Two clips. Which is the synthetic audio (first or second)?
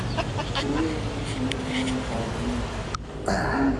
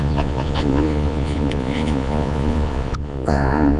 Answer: second